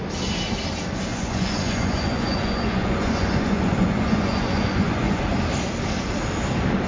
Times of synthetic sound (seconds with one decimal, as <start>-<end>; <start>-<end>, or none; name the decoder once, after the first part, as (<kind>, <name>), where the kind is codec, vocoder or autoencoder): 1.1-5.2 (vocoder, Vocos)